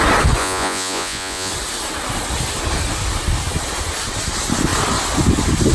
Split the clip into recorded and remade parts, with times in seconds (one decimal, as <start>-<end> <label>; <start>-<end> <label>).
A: 0.0-0.4 recorded; 0.4-1.5 remade; 1.5-5.7 recorded